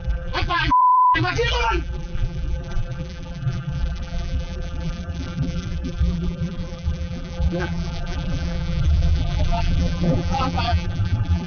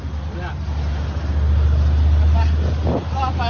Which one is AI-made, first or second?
first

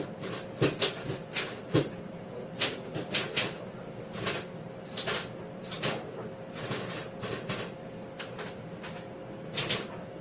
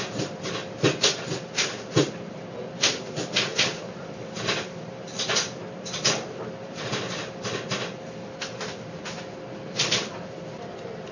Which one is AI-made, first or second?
second